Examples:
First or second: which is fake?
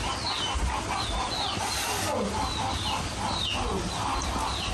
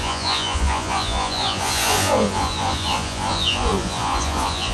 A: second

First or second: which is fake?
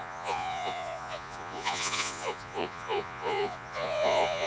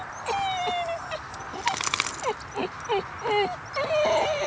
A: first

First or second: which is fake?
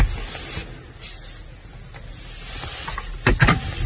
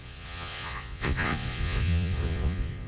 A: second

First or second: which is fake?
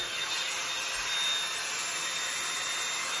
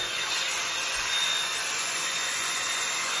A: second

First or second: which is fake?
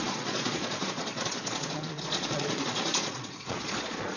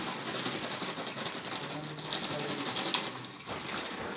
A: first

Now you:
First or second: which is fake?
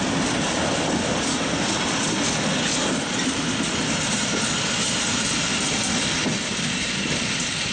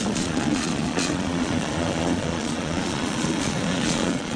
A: second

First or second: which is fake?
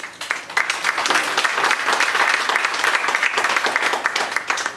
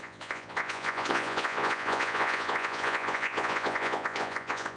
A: second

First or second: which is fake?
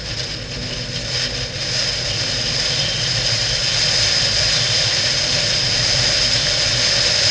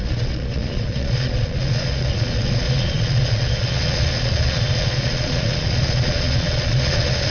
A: second